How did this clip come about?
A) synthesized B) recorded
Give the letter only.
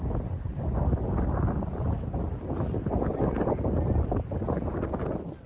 B